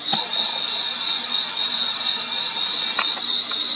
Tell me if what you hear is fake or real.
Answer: real